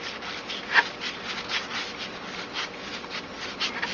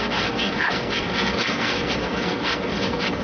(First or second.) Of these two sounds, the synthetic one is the second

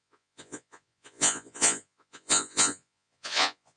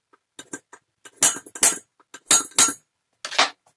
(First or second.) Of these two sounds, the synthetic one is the first